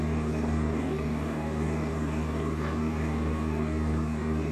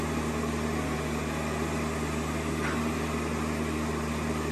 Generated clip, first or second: first